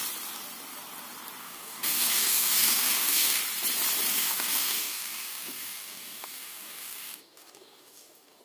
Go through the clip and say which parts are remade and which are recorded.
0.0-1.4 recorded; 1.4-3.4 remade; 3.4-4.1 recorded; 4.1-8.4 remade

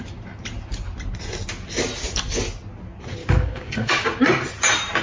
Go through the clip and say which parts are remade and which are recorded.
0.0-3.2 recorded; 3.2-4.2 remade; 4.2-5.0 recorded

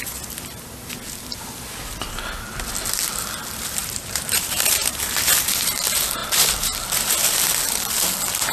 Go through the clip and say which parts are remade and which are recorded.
0.0-3.8 recorded; 3.8-5.0 remade; 5.0-8.5 recorded

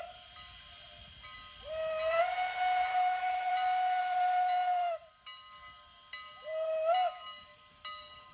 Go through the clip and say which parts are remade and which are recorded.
0.0-2.9 recorded; 2.9-3.5 remade; 3.5-8.3 recorded

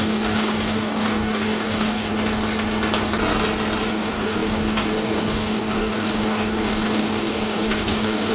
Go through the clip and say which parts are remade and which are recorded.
0.0-2.1 remade; 2.1-3.9 recorded; 3.9-8.3 remade

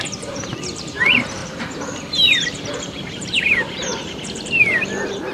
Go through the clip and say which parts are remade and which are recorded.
0.0-5.3 remade

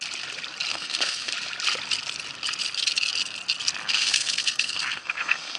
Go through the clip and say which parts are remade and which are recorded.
0.0-0.7 recorded; 0.7-1.3 remade; 1.3-3.8 recorded; 3.8-5.6 remade

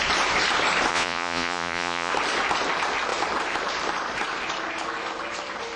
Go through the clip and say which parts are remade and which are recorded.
0.0-0.9 recorded; 0.9-2.1 remade; 2.1-5.8 recorded